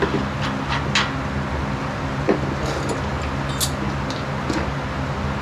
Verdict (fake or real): real